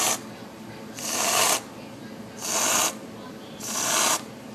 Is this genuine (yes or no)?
yes